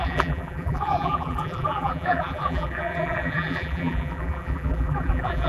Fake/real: fake